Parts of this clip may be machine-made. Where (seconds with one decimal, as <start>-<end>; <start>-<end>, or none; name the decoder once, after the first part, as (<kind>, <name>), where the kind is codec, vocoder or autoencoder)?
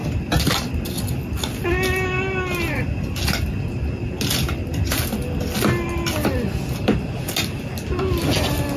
none